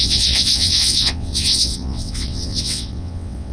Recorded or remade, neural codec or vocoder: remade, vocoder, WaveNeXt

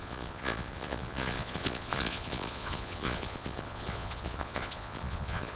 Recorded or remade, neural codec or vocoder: remade, vocoder, Vocos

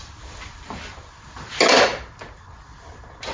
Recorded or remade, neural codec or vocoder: recorded